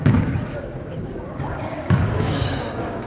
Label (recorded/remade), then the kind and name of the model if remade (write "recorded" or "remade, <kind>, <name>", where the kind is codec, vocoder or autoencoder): remade, codec, DAC